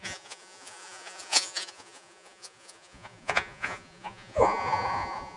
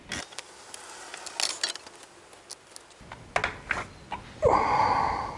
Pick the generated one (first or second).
first